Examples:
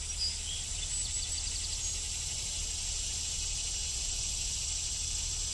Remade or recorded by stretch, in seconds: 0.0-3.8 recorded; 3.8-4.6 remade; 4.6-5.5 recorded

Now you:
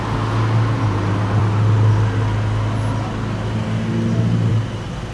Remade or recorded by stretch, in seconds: 0.0-5.1 recorded

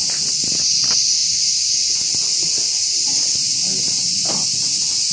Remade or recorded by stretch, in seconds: 0.0-5.1 recorded

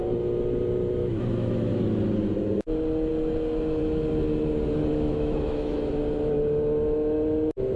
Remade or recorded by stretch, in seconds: 0.0-1.0 recorded; 1.0-1.8 remade; 1.8-4.9 recorded; 4.9-6.0 remade; 6.0-7.8 recorded

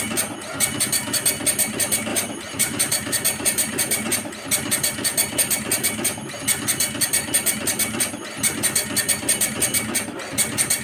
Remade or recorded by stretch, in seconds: 0.0-2.1 recorded; 2.1-4.3 remade; 4.3-10.8 recorded

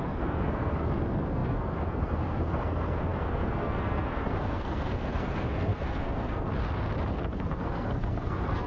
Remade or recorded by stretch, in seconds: 0.0-6.5 remade; 6.5-7.1 recorded; 7.1-8.7 remade

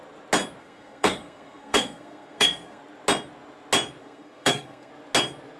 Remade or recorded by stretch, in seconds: 0.0-0.6 recorded; 0.6-2.8 remade; 2.8-4.0 recorded; 4.0-4.9 remade; 4.9-5.6 recorded

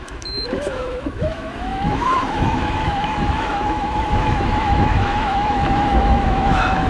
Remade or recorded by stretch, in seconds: 0.0-6.9 remade